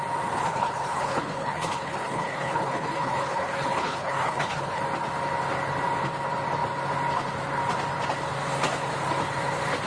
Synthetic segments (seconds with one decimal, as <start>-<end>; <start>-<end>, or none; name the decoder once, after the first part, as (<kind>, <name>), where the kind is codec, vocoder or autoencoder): 0.4-4.8 (codec, HILCodec)